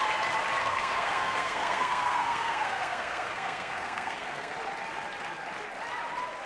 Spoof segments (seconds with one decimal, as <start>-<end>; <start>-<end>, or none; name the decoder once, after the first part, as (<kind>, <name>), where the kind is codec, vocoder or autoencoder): 0.6-4.5 (codec, SNAC)

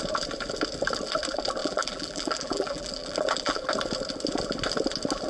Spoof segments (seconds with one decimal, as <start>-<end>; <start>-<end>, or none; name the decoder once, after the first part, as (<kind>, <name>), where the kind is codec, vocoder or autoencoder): 1.6-3.6 (vocoder, BigVGAN v2)

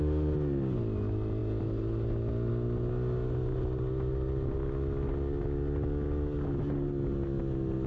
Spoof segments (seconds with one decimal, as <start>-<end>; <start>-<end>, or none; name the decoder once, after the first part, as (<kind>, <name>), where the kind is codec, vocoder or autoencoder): none

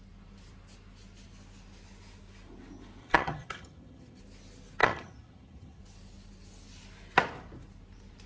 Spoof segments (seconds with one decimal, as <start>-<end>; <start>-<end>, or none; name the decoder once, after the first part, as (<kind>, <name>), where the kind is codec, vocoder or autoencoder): 3.0-4.2 (vocoder, HiFi-GAN); 4.8-5.8

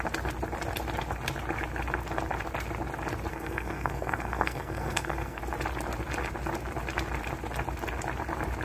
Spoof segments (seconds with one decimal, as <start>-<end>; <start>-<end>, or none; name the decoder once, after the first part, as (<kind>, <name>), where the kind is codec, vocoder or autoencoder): 3.3-5.4 (codec, SNAC)

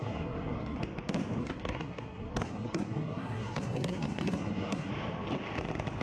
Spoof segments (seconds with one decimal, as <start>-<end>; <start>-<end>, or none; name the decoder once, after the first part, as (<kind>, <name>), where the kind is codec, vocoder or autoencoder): 0.0-0.8 (codec, SNAC); 1.4-4.9